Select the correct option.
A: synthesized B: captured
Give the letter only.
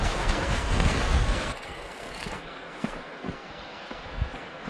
A